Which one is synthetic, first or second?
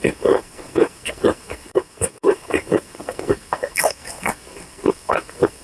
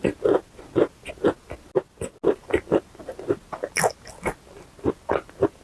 first